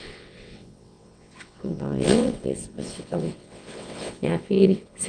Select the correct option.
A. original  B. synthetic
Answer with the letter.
B